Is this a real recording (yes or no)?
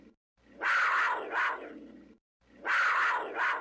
yes